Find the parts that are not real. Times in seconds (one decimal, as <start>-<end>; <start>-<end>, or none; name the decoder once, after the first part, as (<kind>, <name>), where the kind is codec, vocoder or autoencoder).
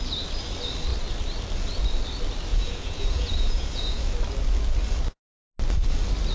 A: 2.5-4.0 (vocoder, Vocos)